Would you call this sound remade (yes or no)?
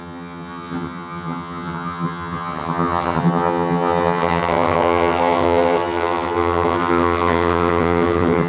yes